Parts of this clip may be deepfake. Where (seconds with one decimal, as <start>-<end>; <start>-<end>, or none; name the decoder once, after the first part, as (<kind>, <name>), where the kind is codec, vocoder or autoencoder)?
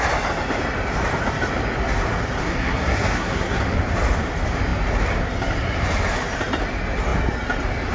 2.4-3.6 (codec, SNAC)